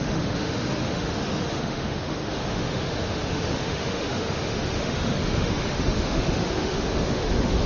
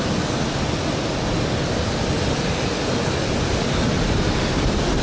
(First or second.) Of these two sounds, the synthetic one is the first